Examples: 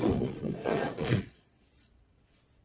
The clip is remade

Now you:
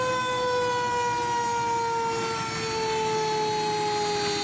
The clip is recorded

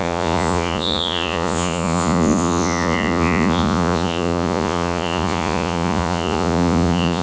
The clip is remade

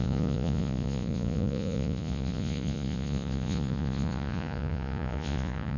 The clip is remade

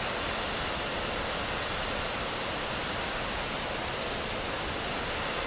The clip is recorded